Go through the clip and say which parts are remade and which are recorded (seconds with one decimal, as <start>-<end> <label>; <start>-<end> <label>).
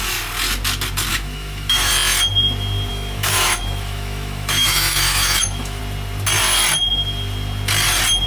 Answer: 0.0-1.1 recorded; 1.1-1.9 remade; 1.9-2.9 recorded; 2.9-5.8 remade; 5.8-8.3 recorded